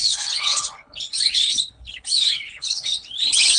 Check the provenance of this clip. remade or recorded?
remade